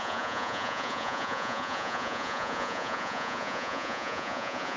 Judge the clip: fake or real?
fake